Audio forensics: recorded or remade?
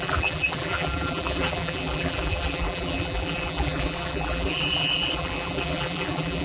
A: remade